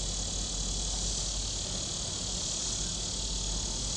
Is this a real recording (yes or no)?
yes